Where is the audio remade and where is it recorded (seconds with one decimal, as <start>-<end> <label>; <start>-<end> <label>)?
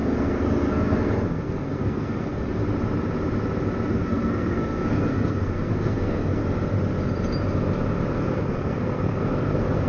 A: 0.0-2.6 remade; 2.6-3.9 recorded; 3.9-6.4 remade; 6.4-8.1 recorded; 8.1-9.9 remade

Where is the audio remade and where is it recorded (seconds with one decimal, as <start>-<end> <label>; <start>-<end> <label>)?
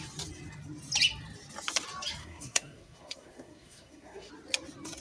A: 0.0-2.2 recorded; 2.2-4.3 remade; 4.3-5.0 recorded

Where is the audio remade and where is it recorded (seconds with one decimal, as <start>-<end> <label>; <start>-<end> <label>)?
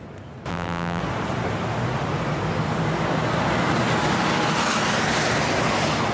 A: 0.0-0.5 recorded; 0.5-1.0 remade; 1.0-6.1 recorded